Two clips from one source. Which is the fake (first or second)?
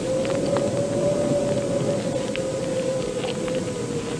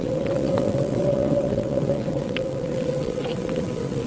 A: second